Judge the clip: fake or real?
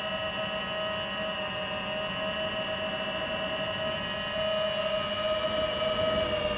real